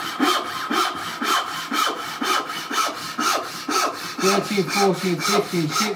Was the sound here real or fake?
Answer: real